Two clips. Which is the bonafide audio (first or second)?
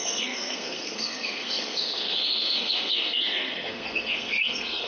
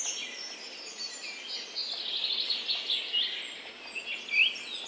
second